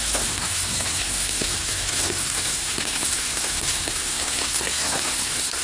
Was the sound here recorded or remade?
remade